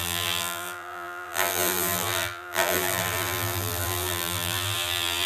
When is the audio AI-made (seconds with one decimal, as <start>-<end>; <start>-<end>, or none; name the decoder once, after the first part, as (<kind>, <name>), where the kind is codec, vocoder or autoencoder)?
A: 0.0-5.3 (vocoder, BigVGAN v2)